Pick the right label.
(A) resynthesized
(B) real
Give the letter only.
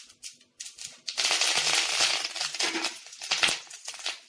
B